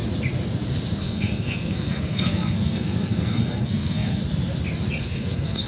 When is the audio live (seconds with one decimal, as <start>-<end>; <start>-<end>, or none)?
0.0-1.0; 4.2-5.0